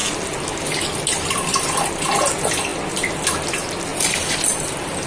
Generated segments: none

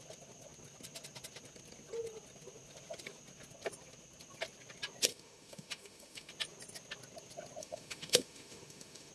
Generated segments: 5.1-6.3 (autoencoder, DAC-VAE); 7.6-9.1

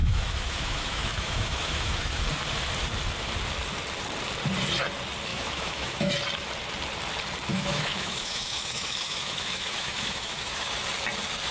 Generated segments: 0.0-2.2 (autoencoder, DAC-VAE); 5.3-6.1; 7.5-10.7

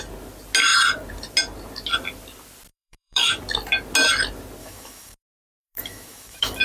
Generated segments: 2.7-3.4 (autoencoder, DAC-VAE); 4.6-6.6

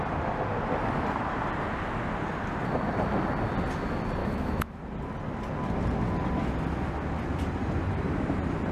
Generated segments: 4.2-4.8 (autoencoder, DAC-VAE)